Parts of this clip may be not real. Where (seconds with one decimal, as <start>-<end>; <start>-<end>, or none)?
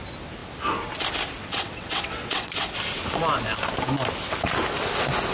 1.4-2.7